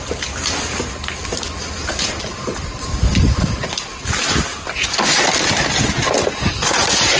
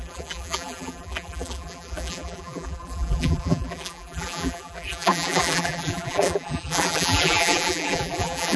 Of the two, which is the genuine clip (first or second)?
first